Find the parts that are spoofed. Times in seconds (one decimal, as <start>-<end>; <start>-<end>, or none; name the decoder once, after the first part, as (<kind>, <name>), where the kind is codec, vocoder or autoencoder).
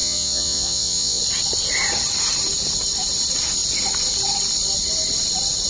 0.0-1.2 (vocoder, Vocos)